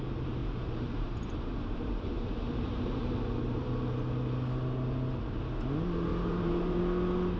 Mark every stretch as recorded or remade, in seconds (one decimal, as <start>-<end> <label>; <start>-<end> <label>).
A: 0.0-0.4 recorded; 0.4-3.7 remade; 3.7-6.1 recorded; 6.1-6.8 remade; 6.8-7.4 recorded